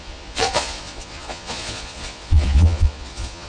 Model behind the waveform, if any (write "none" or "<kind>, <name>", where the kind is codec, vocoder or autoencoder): vocoder, Vocos